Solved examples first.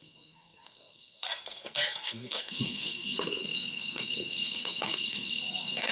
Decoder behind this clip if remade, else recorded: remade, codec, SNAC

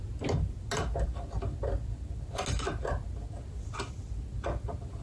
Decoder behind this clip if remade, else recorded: recorded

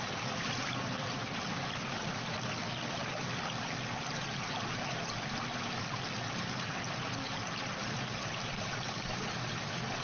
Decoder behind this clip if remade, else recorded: recorded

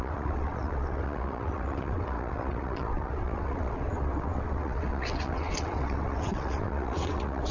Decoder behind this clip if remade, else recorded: remade, vocoder, WaveNeXt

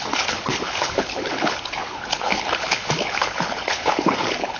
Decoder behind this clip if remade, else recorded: remade, codec, HILCodec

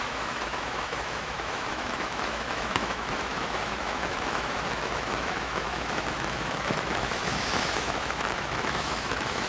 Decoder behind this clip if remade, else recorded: remade, autoencoder, DAC-VAE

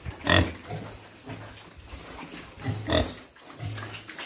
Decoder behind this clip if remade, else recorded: recorded